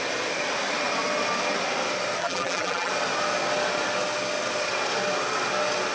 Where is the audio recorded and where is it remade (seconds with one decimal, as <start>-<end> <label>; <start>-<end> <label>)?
0.0-2.2 recorded; 2.2-2.9 remade; 2.9-5.9 recorded